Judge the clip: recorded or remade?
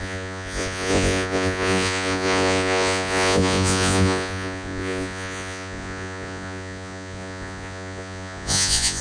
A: remade